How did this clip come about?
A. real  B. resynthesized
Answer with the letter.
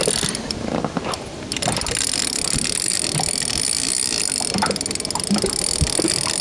A